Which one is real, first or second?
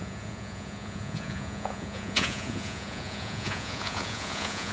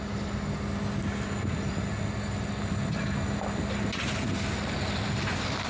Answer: second